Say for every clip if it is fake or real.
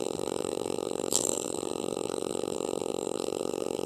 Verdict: fake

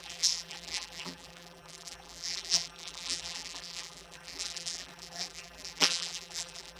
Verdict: fake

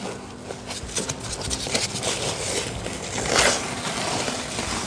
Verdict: real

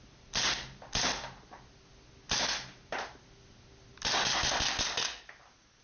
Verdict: real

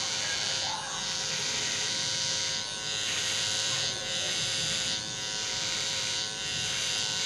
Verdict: fake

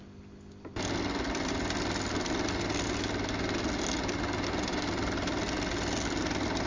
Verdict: real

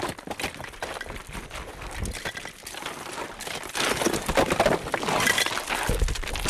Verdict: real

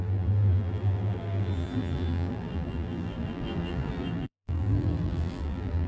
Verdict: fake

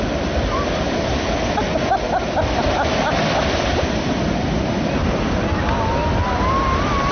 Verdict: real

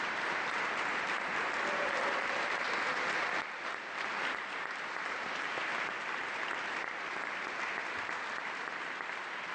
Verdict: fake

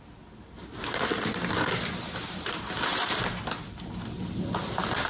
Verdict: real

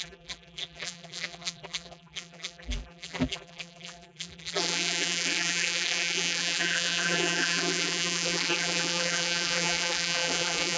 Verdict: fake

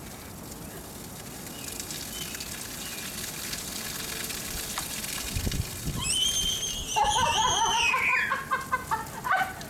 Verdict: real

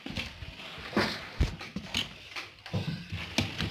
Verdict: real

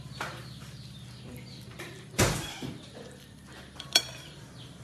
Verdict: fake